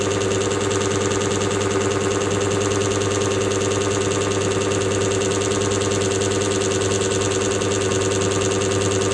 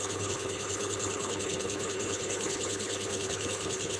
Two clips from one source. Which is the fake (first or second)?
second